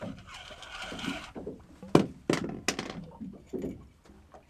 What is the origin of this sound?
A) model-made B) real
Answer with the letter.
B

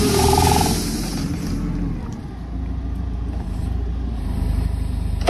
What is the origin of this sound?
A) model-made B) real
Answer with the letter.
A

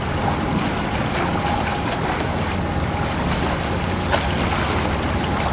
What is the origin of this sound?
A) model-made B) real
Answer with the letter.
B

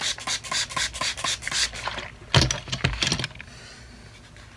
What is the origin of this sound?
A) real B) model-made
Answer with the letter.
A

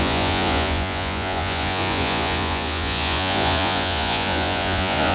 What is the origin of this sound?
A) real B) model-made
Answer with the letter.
B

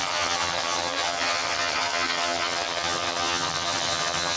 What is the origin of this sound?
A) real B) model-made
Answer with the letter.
B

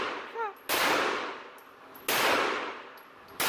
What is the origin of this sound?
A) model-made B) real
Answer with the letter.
B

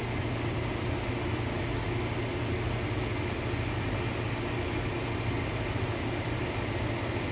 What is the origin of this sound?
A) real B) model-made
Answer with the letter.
A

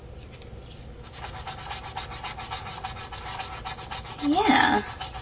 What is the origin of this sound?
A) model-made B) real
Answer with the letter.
B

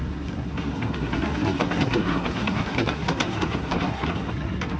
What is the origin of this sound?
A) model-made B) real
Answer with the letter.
A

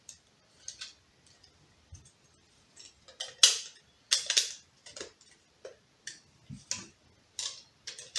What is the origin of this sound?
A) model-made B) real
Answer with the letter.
B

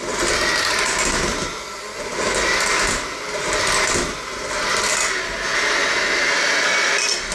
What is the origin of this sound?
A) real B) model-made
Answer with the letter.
A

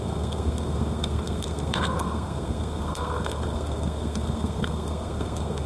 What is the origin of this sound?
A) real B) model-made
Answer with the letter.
B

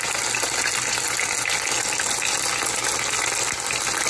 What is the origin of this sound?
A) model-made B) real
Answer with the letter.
B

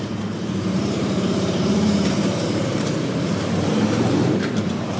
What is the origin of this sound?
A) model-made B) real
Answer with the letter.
A